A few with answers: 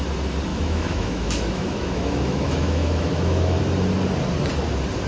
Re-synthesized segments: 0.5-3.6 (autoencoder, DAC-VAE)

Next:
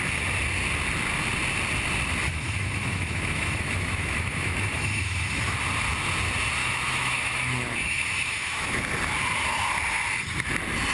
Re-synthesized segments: 2.3-5.4 (autoencoder, DAC-VAE); 6.6-8.8

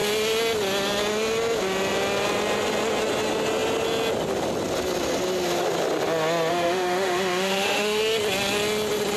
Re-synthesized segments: 6.5-8.0 (autoencoder, DAC-VAE)

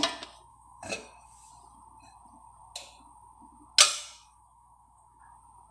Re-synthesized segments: 0.5-1.5 (autoencoder, DAC-VAE); 3.9-5.2

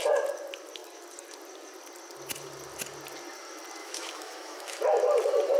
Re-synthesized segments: 3.8-4.8 (autoencoder, DAC-VAE)

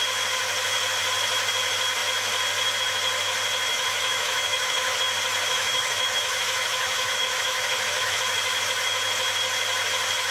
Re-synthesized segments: 3.7-5.0 (autoencoder, DAC-VAE); 5.5-8.2

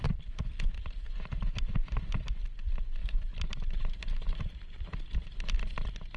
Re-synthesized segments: none

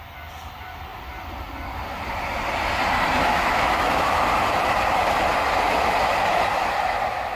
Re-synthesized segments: 3.2-4.2 (autoencoder, DAC-VAE)